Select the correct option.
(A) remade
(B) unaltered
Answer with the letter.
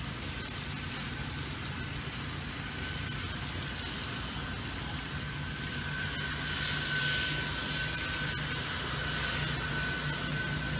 B